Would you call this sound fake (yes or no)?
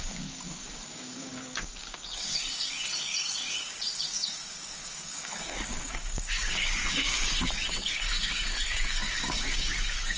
yes